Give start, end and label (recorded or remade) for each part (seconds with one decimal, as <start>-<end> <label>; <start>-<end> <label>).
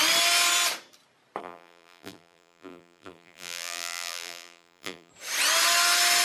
0.0-1.4 recorded; 1.4-5.1 remade; 5.1-6.2 recorded